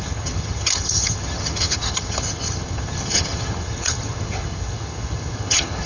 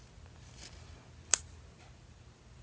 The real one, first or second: second